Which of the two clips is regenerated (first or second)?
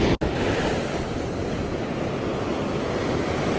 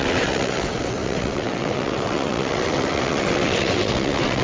second